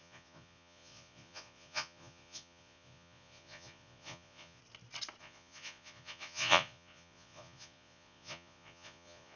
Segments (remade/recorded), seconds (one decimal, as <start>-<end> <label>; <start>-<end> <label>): 0.0-4.6 remade; 4.6-5.2 recorded; 5.2-9.4 remade